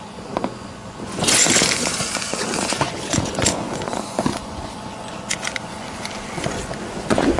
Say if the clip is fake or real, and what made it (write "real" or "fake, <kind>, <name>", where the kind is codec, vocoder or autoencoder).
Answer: fake, vocoder, Vocos